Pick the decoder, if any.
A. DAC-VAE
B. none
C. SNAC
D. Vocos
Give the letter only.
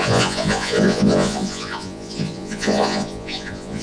D